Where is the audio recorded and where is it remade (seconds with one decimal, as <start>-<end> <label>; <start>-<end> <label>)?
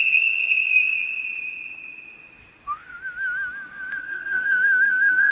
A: 0.0-0.8 remade; 0.8-4.0 recorded; 4.0-5.3 remade